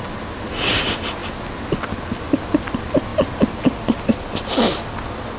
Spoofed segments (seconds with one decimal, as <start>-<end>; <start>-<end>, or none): none